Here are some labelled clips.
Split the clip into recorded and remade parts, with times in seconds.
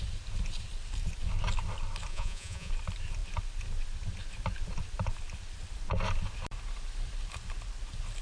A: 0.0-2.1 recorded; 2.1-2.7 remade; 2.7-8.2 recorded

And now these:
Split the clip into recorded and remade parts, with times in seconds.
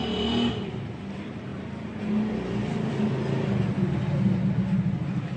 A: 0.0-0.5 remade; 0.5-1.5 recorded; 1.5-2.9 remade; 2.9-5.4 recorded